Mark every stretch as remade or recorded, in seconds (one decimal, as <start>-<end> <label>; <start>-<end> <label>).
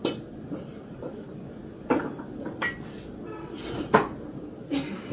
0.0-5.1 recorded